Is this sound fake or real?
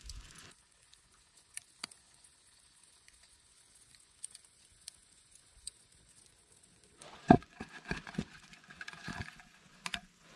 fake